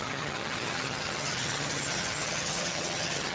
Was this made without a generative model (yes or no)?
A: no